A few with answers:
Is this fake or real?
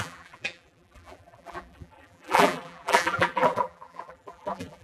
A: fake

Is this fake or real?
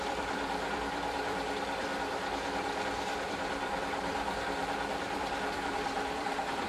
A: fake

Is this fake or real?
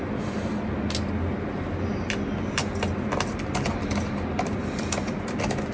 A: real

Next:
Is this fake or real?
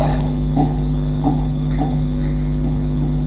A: fake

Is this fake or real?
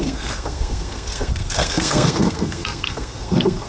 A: fake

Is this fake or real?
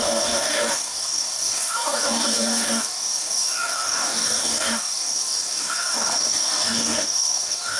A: fake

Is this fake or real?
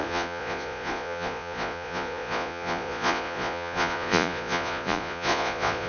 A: fake